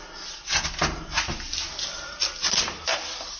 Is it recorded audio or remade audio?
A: recorded